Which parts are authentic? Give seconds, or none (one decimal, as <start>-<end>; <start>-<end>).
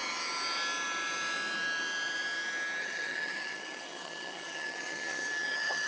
0.0-2.8